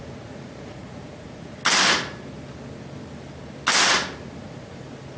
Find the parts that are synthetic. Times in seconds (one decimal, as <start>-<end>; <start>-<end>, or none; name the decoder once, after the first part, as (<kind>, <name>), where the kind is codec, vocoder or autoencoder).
0.0-1.6 (vocoder, Vocos); 4.4-5.2